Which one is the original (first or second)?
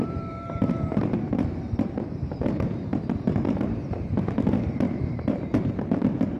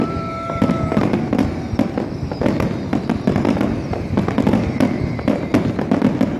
second